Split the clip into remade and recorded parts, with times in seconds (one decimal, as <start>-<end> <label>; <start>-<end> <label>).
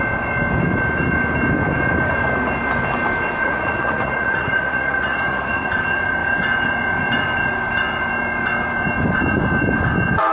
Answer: 0.0-3.4 recorded; 3.4-5.8 remade; 5.8-10.3 recorded